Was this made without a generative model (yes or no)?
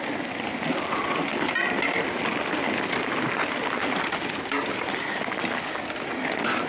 yes